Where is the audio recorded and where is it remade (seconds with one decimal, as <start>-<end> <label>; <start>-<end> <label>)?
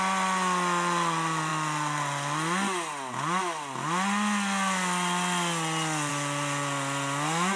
0.0-7.6 recorded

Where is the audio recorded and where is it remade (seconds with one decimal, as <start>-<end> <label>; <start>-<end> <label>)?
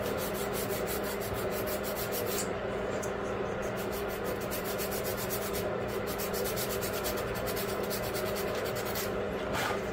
0.0-0.4 remade; 0.4-4.5 recorded; 4.5-5.1 remade; 5.1-6.5 recorded; 6.5-9.9 remade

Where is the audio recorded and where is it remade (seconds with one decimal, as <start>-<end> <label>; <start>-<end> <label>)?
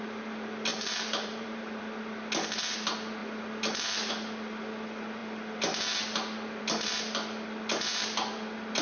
0.0-0.7 recorded; 0.7-1.8 remade; 1.8-8.8 recorded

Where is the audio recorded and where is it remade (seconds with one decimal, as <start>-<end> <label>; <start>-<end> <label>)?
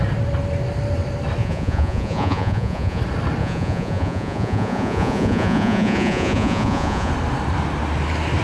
0.0-1.4 recorded; 1.4-3.0 remade; 3.0-3.4 recorded; 3.4-7.1 remade; 7.1-8.4 recorded